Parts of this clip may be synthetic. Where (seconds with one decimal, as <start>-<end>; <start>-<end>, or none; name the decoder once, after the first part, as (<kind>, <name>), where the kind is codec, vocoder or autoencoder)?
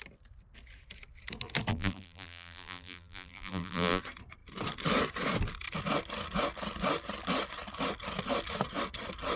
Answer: 1.7-4.0 (vocoder, BigVGAN v2)